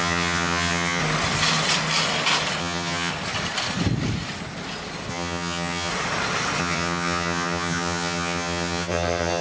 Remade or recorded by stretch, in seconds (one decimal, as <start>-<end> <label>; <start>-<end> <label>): 0.0-1.0 remade; 1.0-2.6 recorded; 2.6-3.1 remade; 3.1-5.1 recorded; 5.1-5.9 remade; 5.9-6.6 recorded; 6.6-9.4 remade